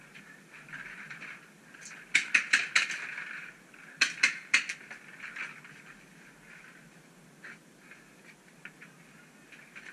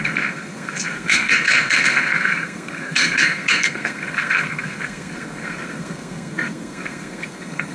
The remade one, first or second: second